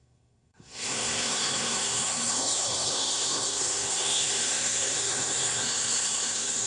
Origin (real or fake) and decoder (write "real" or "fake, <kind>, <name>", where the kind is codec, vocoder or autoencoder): fake, codec, SNAC